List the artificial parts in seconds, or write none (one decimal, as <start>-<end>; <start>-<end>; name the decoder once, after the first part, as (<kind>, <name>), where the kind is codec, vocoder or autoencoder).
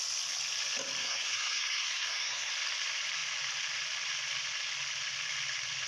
1.0-2.5 (codec, SNAC)